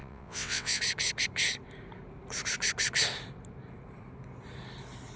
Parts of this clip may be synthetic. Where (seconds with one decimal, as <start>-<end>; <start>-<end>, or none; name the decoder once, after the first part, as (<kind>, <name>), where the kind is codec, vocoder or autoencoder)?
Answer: 0.0-0.8 (vocoder, WaveNeXt)